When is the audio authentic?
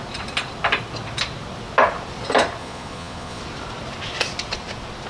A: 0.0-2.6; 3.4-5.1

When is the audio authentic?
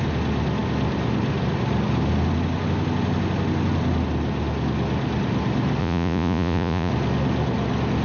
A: 0.0-5.8; 6.9-8.0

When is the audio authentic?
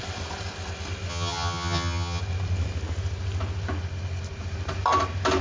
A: 0.0-1.1; 2.2-5.4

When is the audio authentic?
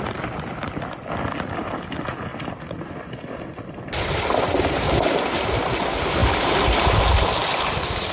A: 0.0-6.2; 6.7-7.4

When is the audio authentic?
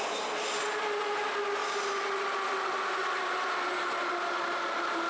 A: 0.0-5.1